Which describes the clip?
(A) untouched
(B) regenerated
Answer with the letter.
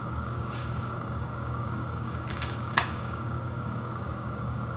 B